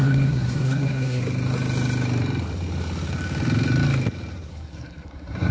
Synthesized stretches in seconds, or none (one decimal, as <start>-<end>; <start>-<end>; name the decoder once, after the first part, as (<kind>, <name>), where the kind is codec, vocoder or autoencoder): 0.0-1.2 (codec, SNAC); 4.5-5.5